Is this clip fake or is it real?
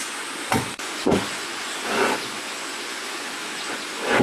fake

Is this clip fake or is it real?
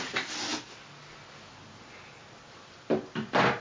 real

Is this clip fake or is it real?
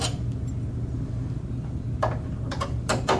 fake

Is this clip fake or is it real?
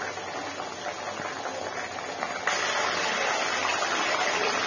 real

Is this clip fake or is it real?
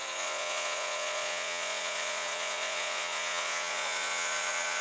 fake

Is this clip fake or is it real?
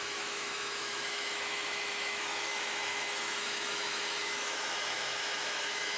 fake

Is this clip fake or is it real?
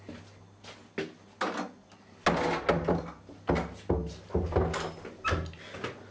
real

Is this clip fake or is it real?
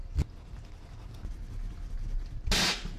real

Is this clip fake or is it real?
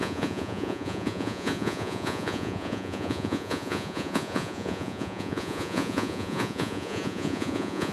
fake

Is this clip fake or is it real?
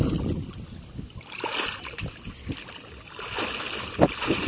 real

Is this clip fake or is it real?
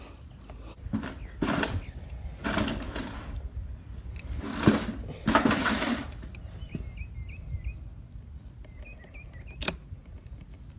real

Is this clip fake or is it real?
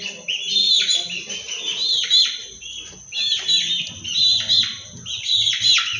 real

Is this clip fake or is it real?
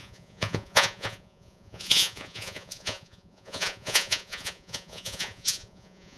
fake